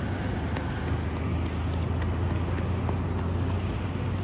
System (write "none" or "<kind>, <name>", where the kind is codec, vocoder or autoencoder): none